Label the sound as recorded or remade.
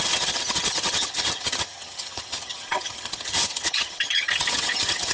remade